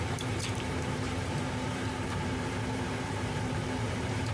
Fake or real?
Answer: fake